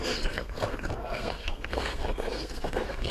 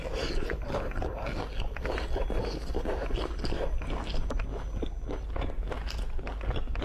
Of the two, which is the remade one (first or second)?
first